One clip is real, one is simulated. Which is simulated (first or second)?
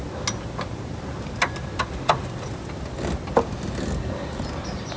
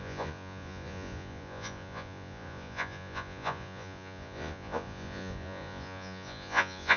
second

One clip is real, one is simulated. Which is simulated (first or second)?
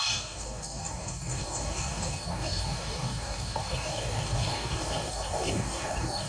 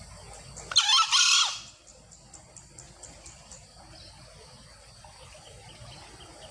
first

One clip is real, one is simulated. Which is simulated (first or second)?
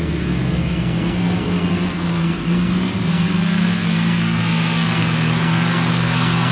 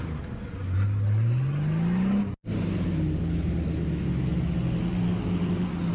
first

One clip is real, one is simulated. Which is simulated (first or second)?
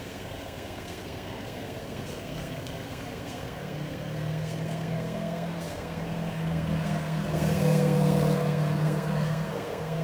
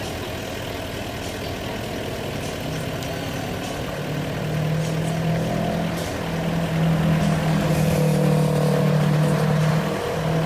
first